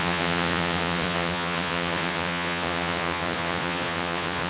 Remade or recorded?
remade